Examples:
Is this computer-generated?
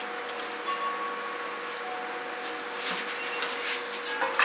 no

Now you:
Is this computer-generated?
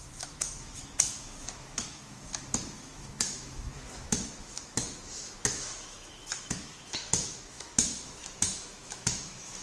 yes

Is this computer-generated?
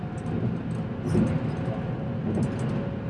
no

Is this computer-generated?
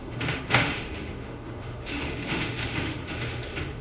yes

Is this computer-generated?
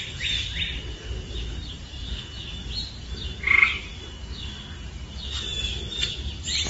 no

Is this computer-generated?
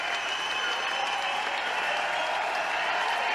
no